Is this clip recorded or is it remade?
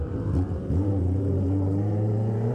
remade